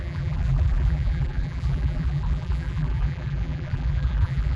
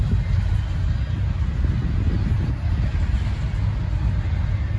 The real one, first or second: second